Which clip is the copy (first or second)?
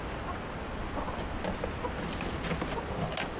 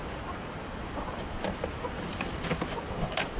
second